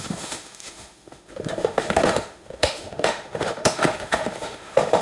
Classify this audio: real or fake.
fake